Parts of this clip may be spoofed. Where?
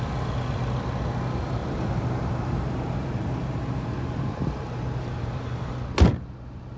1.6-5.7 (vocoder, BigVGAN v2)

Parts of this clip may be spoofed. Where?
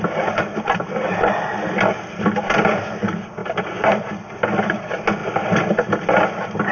none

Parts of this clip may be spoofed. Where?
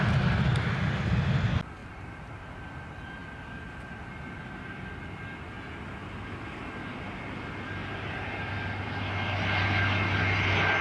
1.8-2.5 (vocoder, BigVGAN v2); 7.8-8.5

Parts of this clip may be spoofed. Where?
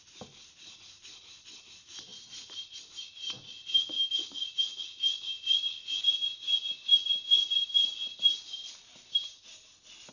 2.1-3.4 (vocoder, BigVGAN v2)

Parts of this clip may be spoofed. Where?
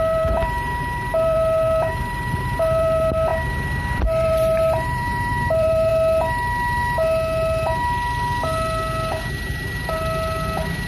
0.0-3.3 (vocoder, BigVGAN v2); 4.0-5.9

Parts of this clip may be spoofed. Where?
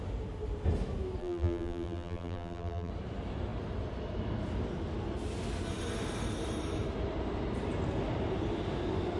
1.2-2.9 (vocoder, BigVGAN v2)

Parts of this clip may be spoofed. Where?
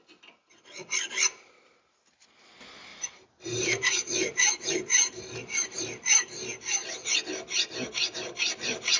2.9-5.2 (vocoder, BigVGAN v2)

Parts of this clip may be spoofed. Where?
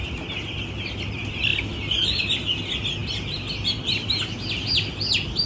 none